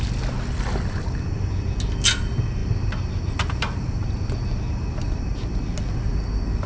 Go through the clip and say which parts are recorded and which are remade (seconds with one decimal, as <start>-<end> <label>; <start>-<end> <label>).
0.0-6.7 recorded